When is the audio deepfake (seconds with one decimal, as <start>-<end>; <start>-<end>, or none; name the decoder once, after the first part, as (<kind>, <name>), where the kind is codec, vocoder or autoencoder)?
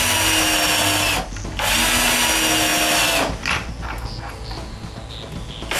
none